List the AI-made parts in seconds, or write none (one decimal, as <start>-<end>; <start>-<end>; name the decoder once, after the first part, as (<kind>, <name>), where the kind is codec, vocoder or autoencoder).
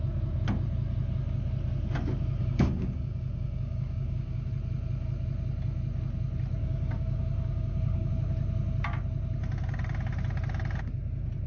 2.4-4.5 (codec, DAC); 6.6-8.1